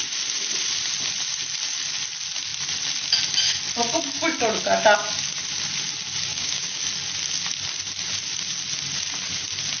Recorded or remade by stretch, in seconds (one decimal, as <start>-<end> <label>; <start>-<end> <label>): 0.0-6.3 recorded; 6.3-6.8 remade; 6.8-9.8 recorded